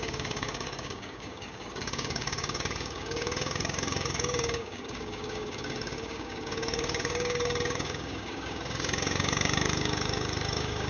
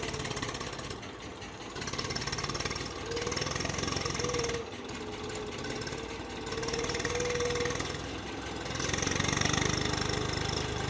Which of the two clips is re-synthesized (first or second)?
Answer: first